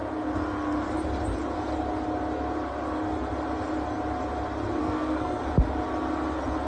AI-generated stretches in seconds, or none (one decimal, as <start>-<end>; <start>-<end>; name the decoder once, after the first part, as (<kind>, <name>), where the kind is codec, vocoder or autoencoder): 4.8-5.4 (codec, SNAC)